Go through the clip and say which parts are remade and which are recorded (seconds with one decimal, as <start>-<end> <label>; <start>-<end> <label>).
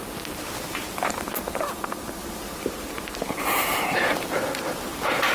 0.0-5.3 remade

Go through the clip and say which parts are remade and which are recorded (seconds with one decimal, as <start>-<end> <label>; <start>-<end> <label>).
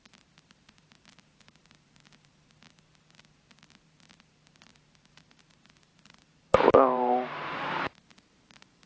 0.0-8.9 remade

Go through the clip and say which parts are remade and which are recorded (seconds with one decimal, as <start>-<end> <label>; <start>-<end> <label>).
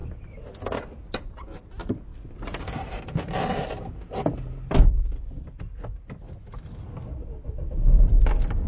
0.0-2.1 recorded; 2.1-3.8 remade; 3.8-8.7 recorded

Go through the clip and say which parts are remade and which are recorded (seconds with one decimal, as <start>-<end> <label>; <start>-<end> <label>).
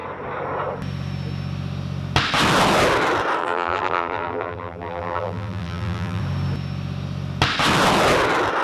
0.0-3.4 recorded; 3.4-6.2 remade; 6.2-8.6 recorded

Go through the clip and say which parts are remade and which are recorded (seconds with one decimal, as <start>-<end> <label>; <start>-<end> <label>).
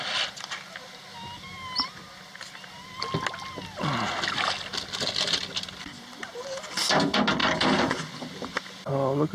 0.0-4.7 recorded; 4.7-5.4 remade; 5.4-7.4 recorded; 7.4-7.9 remade; 7.9-9.3 recorded